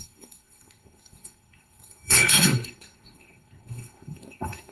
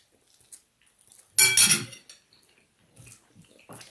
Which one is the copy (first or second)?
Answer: first